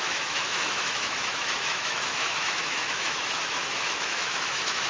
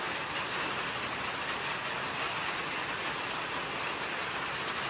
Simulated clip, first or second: first